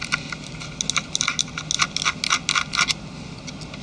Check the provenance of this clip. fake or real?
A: real